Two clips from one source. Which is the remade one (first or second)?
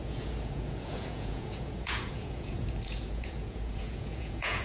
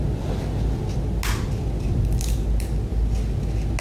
first